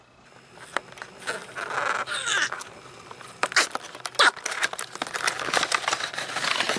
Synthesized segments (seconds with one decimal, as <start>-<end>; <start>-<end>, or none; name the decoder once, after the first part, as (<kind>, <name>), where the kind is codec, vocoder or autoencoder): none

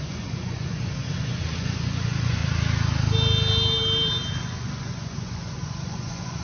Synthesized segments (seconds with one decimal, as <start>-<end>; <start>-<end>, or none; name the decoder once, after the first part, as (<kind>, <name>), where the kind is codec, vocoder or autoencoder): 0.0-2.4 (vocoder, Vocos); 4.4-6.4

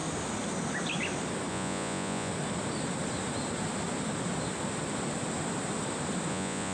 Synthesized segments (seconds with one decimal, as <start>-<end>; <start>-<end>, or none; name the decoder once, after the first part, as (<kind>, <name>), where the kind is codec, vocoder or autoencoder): 1.5-2.3 (vocoder, Vocos); 6.3-6.7

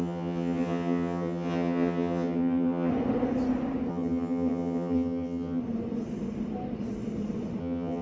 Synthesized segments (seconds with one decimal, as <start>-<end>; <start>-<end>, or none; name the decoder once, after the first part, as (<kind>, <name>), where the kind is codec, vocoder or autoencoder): 0.0-2.9 (vocoder, HiFi-GAN); 3.9-5.6; 7.6-8.0

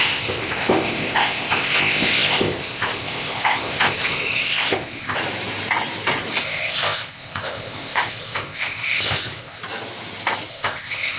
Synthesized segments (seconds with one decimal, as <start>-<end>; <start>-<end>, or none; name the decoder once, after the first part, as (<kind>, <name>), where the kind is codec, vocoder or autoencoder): 0.0-5.2 (codec, ZipCodec); 6.4-9.6; 10.5-11.2

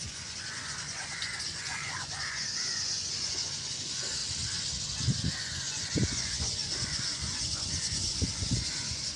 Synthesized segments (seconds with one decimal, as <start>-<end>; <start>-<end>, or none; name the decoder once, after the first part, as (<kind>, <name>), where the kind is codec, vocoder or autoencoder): 0.0-4.2 (vocoder, Vocos); 5.4-9.2

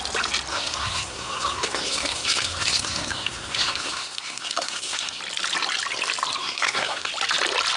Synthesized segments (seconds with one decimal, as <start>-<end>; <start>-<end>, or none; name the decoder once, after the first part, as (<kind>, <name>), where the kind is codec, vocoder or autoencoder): 0.5-5.2 (codec, SNAC); 6.4-7.1